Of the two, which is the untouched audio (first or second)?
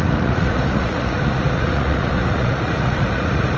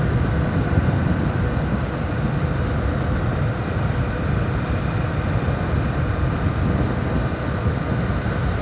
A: second